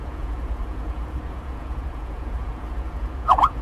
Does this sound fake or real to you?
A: fake